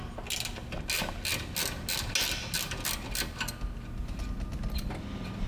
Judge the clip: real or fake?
real